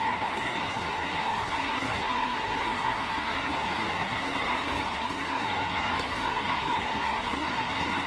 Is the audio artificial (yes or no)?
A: yes